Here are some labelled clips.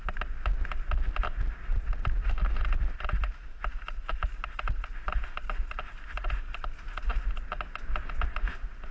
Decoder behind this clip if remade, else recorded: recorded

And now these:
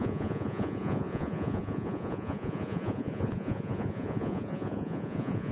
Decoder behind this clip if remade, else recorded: remade, vocoder, Vocos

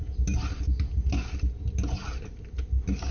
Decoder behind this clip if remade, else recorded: recorded